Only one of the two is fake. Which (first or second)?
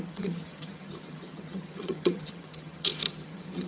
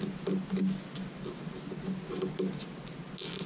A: first